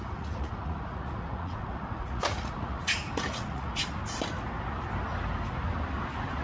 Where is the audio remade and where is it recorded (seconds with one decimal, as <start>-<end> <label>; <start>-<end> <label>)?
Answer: 0.0-3.8 remade; 3.8-6.4 recorded